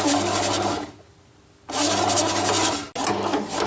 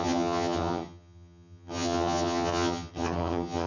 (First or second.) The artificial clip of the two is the second